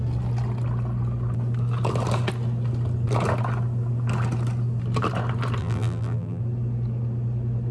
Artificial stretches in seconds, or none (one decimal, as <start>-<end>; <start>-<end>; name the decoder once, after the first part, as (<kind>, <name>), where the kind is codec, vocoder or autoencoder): 5.6-6.4 (vocoder, BigVGAN v2)